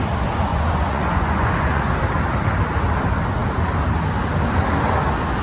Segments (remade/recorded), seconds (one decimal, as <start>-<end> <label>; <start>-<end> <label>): 0.0-0.5 recorded; 0.5-1.8 remade; 1.8-5.4 recorded